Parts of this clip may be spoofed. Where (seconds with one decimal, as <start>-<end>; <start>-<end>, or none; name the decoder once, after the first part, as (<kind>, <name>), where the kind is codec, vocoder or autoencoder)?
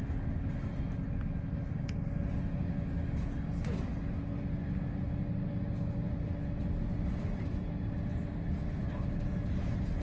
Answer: none